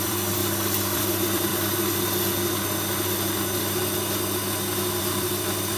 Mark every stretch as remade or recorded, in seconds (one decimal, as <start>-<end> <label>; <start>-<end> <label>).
0.0-1.5 remade; 1.5-5.0 recorded; 5.0-5.8 remade